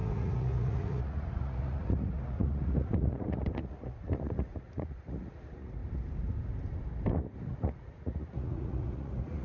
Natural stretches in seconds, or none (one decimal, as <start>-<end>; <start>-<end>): 5.8-7.1